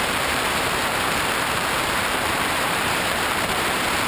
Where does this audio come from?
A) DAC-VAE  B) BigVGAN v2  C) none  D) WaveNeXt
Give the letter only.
B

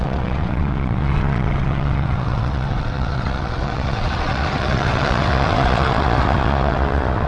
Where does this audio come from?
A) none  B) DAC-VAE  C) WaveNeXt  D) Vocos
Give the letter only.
C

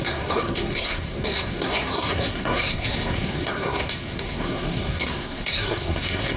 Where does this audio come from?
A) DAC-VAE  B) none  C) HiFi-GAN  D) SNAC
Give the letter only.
D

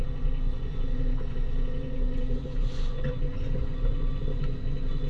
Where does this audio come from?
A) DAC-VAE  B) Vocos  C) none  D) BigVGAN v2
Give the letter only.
B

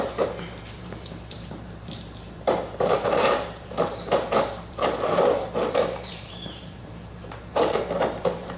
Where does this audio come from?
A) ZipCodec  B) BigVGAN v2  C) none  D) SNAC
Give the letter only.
B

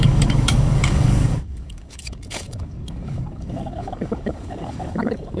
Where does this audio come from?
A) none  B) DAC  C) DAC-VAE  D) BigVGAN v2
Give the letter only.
B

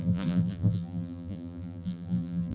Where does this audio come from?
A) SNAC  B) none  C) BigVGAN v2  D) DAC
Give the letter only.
C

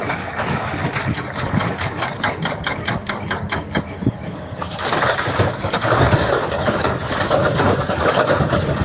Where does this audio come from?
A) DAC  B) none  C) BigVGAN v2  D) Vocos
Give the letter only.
A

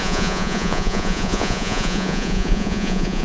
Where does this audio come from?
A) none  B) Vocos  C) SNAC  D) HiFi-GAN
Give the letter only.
B